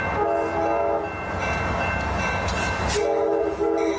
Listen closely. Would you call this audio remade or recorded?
recorded